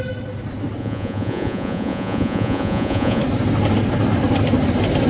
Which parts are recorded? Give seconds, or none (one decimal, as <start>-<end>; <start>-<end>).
0.0-0.8; 3.2-5.1